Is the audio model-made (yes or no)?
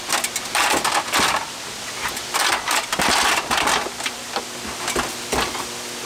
no